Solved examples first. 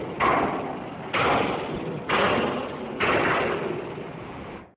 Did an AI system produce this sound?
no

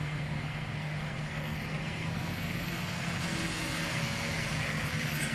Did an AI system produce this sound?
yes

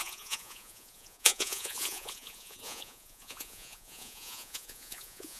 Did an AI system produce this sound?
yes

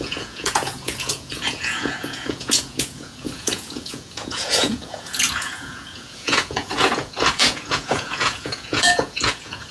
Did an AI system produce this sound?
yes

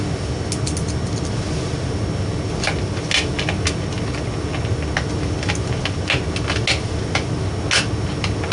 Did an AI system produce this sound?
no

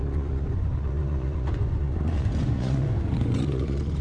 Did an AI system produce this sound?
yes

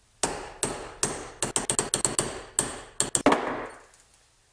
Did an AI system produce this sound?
no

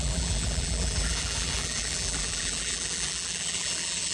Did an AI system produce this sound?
yes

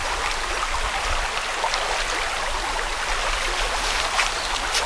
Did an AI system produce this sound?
no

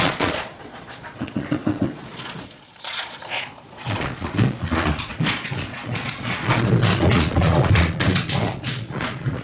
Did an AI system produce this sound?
yes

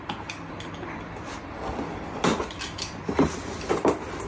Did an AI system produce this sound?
no